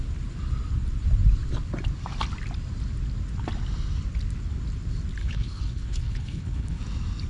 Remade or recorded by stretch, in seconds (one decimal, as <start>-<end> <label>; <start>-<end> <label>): 0.0-5.2 recorded; 5.2-6.8 remade; 6.8-7.3 recorded

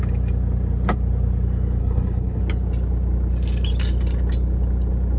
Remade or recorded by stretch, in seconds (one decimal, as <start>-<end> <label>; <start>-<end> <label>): 0.0-1.8 recorded; 1.8-2.4 remade; 2.4-5.2 recorded

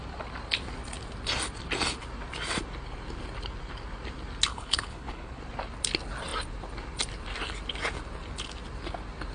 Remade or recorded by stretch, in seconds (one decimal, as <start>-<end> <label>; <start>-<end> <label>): 0.0-4.5 recorded; 4.5-5.4 remade; 5.4-9.3 recorded

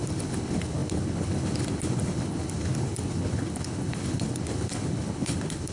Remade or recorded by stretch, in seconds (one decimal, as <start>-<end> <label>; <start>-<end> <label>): 0.0-5.7 remade

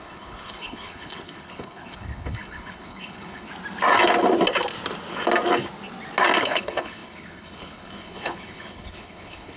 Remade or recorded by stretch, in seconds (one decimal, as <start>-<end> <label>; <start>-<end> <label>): 0.0-3.5 remade; 3.5-6.4 recorded; 6.4-9.6 remade